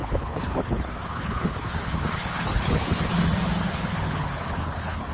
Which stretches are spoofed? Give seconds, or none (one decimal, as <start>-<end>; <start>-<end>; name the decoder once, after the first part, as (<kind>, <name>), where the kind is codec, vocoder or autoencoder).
0.0-3.1 (codec, HILCodec); 3.6-5.1